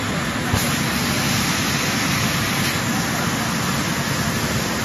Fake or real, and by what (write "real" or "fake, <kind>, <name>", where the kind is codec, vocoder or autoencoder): real